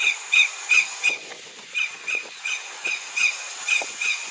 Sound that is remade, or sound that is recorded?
remade